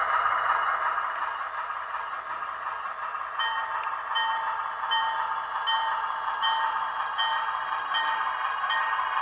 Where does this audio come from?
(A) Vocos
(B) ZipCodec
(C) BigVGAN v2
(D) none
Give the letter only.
D